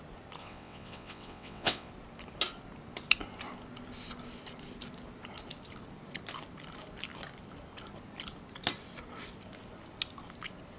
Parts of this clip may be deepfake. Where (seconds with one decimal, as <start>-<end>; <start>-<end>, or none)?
0.4-1.9